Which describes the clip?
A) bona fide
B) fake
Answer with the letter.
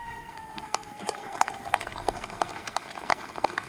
B